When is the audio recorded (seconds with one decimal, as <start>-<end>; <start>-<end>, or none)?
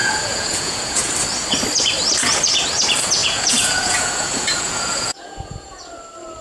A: 1.1-3.2; 5.8-6.4